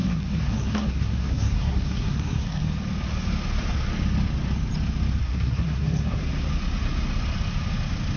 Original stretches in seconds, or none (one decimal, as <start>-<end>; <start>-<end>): 2.6-5.2; 6.2-8.2